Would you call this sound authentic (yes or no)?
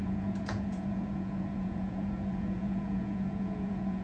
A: no